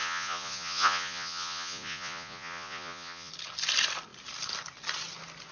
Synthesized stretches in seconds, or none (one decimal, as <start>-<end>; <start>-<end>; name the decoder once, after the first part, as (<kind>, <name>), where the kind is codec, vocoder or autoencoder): 0.0-3.3 (vocoder, Vocos)